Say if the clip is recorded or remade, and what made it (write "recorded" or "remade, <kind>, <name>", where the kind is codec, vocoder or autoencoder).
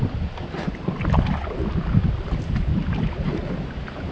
recorded